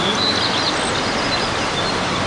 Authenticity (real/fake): real